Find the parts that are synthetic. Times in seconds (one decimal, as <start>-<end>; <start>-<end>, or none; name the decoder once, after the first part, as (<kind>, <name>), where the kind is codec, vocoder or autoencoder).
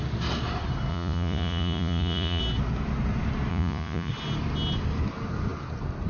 0.9-2.4 (vocoder, Vocos); 3.5-4.1